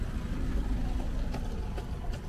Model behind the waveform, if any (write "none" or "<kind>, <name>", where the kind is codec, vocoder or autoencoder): none